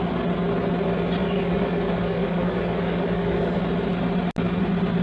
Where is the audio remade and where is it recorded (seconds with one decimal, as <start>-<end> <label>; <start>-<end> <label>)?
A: 0.0-1.2 recorded; 1.2-3.6 remade; 3.6-5.0 recorded

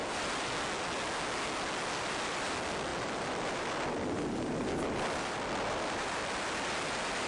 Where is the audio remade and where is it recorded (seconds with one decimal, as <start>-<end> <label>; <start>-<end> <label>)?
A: 0.0-2.9 recorded; 2.9-6.4 remade; 6.4-7.3 recorded